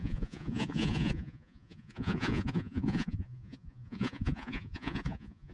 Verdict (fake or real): fake